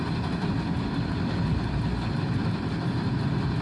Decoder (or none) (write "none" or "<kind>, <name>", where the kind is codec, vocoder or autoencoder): none